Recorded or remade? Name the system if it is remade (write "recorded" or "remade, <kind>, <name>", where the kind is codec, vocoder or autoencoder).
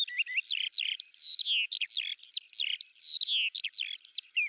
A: recorded